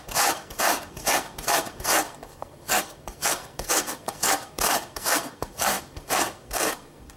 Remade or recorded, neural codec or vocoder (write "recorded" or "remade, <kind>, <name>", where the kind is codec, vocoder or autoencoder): remade, codec, SNAC